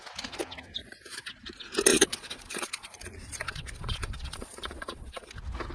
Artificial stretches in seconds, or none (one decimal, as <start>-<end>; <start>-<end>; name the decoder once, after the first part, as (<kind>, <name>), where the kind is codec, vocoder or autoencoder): 0.8-1.3 (vocoder, Vocos); 1.9-5.3